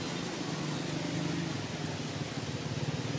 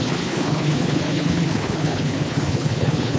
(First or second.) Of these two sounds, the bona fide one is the first